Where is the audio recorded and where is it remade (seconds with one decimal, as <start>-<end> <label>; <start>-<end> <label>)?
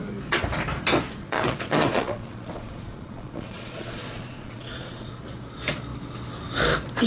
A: 0.0-1.2 recorded; 1.2-5.1 remade; 5.1-7.1 recorded